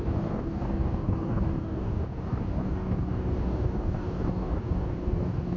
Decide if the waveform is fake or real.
fake